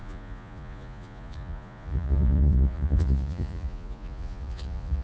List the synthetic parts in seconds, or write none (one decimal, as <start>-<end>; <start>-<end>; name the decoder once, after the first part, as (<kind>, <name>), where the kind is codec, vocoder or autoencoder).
0.0-5.0 (vocoder, Vocos)